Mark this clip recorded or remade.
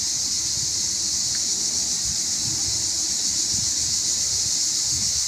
recorded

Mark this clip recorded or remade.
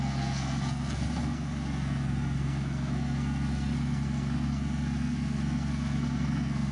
remade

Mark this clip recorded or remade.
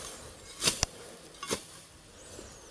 recorded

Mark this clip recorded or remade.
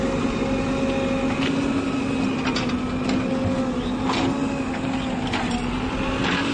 recorded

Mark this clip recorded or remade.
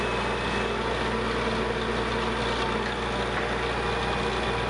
recorded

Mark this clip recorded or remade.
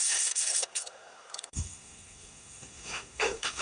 remade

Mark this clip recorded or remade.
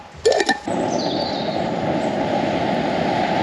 recorded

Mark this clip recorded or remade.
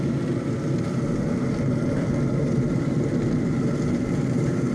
recorded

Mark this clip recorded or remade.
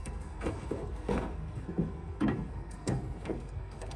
remade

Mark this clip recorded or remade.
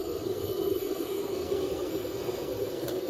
remade